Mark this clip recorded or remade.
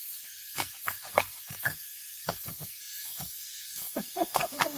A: remade